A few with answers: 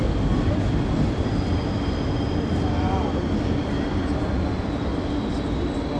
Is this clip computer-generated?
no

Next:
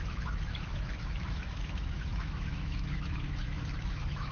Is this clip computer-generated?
yes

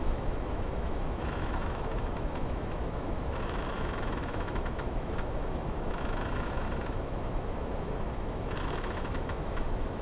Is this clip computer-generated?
yes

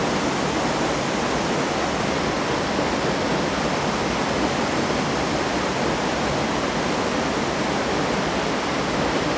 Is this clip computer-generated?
no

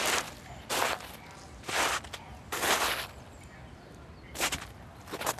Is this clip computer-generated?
no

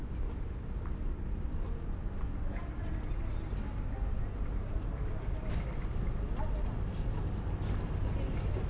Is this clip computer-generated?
no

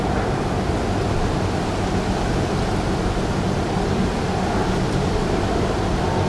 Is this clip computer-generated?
no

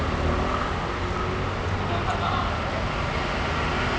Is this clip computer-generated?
no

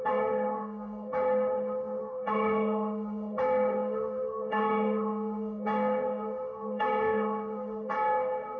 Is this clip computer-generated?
yes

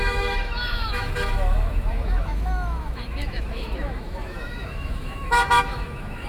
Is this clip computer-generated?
yes